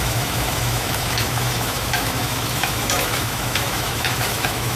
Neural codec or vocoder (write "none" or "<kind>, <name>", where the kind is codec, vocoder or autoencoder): autoencoder, DAC-VAE